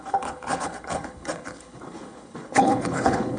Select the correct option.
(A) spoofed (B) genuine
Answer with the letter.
A